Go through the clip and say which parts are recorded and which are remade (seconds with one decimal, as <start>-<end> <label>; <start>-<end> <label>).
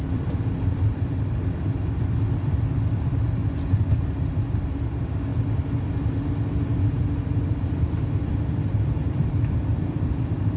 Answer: 0.0-3.4 remade; 3.4-4.0 recorded; 4.0-5.3 remade; 5.3-7.5 recorded; 7.5-10.6 remade